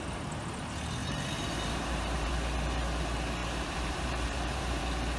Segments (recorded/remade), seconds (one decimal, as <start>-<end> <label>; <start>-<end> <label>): 0.0-1.0 recorded; 1.0-2.3 remade; 2.3-3.4 recorded; 3.4-4.8 remade; 4.8-5.2 recorded